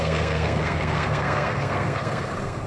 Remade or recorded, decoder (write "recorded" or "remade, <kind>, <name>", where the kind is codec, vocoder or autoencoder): remade, codec, SNAC